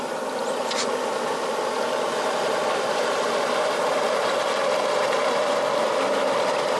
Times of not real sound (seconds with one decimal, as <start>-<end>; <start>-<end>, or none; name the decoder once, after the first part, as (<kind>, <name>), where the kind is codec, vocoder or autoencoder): none